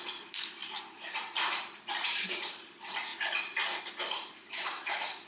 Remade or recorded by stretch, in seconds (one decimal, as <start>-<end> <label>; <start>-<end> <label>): 0.0-3.1 remade; 3.1-3.8 recorded; 3.8-5.3 remade